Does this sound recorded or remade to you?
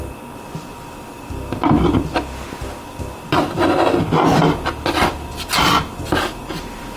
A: recorded